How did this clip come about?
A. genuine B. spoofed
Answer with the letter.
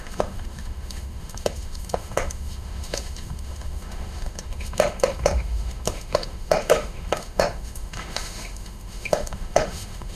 B